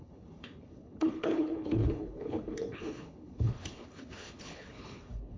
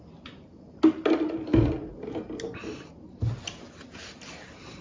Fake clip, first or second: first